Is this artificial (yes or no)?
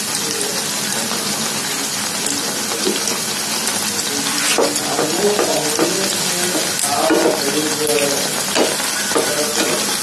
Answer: no